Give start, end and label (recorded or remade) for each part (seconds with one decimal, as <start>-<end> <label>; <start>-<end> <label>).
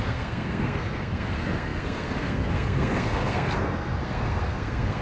0.0-5.0 remade